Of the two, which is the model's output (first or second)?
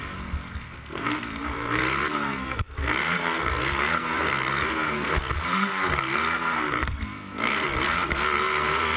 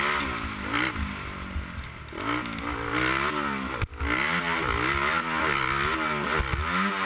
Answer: first